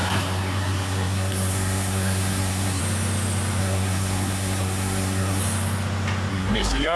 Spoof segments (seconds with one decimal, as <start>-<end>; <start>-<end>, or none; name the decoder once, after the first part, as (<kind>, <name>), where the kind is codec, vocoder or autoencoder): 0.0-2.8 (codec, SNAC); 3.6-5.4; 6.3-7.0